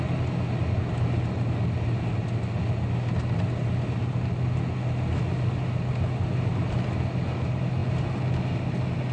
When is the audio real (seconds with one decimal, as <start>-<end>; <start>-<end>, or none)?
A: 0.0-9.1